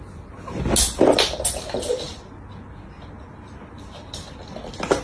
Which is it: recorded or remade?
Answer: recorded